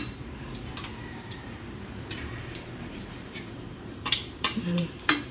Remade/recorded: remade